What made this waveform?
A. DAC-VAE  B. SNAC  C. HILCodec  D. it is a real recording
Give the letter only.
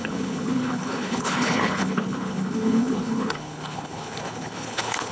C